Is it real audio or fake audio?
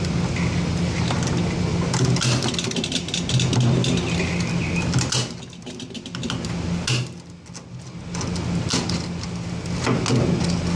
real